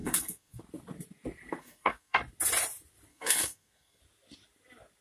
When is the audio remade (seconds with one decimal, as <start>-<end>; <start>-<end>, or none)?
0.0-0.6; 1.6-2.2; 3.1-4.0